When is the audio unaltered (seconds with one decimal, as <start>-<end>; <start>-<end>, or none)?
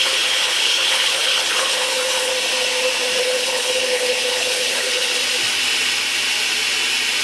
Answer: 2.3-3.2; 5.2-7.2